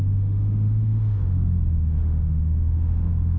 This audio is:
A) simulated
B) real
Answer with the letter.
A